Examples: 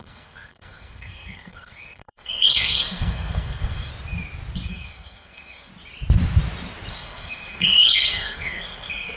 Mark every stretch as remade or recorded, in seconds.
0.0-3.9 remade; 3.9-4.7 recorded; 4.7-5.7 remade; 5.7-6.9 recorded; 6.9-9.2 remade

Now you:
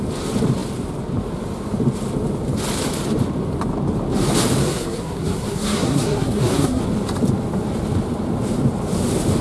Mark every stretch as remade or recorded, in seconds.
0.0-4.6 recorded; 4.6-6.8 remade; 6.8-9.4 recorded

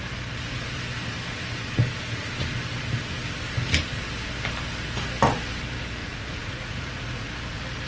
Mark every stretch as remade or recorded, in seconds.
0.0-6.0 recorded; 6.0-7.3 remade; 7.3-7.9 recorded

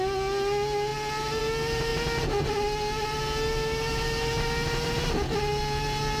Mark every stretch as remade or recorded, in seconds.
0.0-6.2 recorded

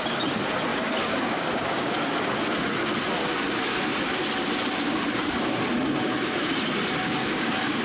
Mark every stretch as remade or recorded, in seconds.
0.0-0.7 recorded; 0.7-1.9 remade; 1.9-7.2 recorded; 7.2-7.8 remade

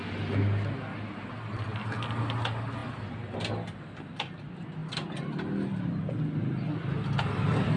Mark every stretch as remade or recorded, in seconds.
0.0-7.8 recorded

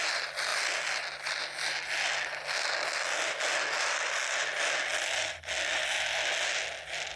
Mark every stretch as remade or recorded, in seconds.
0.0-7.2 recorded